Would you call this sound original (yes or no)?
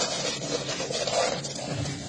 yes